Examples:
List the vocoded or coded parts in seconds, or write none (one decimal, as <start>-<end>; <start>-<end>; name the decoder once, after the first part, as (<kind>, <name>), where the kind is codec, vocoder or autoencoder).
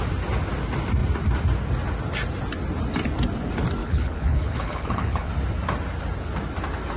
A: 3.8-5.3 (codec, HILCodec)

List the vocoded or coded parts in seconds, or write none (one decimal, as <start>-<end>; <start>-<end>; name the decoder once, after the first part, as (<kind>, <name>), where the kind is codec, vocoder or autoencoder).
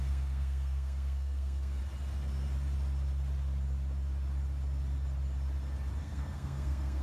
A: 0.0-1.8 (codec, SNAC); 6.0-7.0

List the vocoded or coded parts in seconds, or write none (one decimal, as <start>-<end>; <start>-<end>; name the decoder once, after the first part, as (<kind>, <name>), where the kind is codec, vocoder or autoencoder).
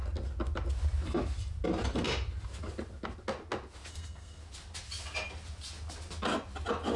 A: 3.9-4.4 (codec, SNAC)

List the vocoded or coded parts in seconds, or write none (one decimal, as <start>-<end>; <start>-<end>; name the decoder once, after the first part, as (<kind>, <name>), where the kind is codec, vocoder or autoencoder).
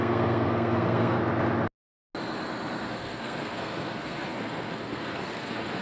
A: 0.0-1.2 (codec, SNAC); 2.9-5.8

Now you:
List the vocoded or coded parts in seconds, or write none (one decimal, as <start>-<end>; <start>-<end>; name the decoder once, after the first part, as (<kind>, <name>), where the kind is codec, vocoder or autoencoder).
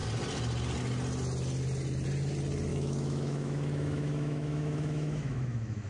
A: 2.7-5.9 (autoencoder, DAC-VAE)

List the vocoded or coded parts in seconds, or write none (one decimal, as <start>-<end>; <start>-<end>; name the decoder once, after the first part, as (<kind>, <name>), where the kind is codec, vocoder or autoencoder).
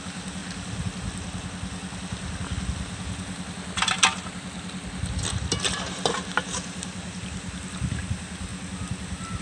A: none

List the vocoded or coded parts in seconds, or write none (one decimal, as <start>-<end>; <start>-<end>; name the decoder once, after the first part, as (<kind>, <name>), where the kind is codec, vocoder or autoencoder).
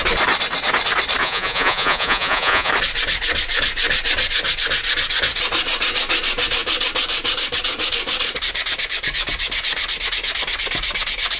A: 1.2-2.7 (vocoder, Vocos)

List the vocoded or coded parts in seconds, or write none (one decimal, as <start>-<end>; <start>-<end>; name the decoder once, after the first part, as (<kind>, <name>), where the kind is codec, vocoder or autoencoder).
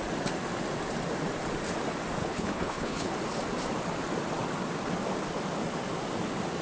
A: 2.2-3.1 (codec, HILCodec)